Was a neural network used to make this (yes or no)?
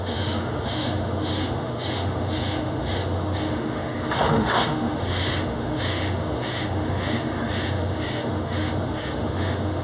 yes